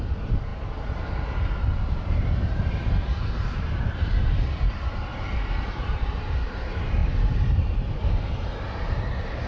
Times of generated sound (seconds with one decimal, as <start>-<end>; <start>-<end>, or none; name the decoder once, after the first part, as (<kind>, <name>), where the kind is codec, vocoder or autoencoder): 0.0-0.5 (vocoder, BigVGAN v2); 2.2-5.1; 5.7-9.5